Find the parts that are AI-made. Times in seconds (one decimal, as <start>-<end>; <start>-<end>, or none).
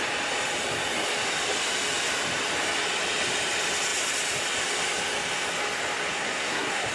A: 6.1-6.9